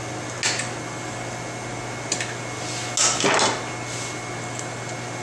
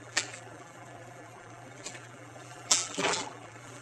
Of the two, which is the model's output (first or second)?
second